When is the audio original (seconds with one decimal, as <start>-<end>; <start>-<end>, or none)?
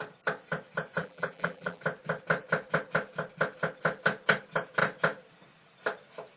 0.0-1.0; 1.8-6.4